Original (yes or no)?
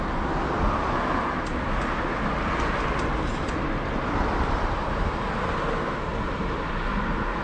yes